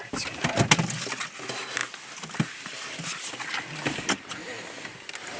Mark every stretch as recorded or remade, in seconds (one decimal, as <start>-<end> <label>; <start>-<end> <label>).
0.0-5.4 recorded